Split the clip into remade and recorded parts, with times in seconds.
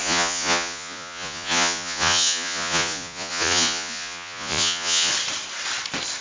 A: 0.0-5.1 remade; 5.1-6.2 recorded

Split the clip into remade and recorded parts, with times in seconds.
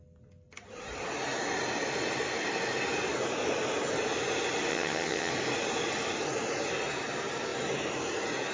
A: 0.0-4.7 recorded; 4.7-5.3 remade; 5.3-8.5 recorded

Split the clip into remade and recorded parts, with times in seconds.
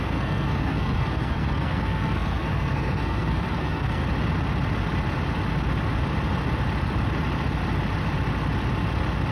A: 0.0-4.0 remade; 4.0-9.3 recorded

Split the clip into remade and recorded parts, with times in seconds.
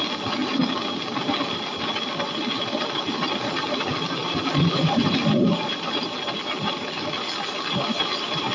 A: 0.0-8.5 recorded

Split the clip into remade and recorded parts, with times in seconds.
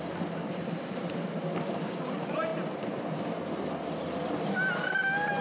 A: 0.0-5.4 recorded